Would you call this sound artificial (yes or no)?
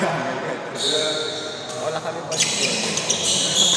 no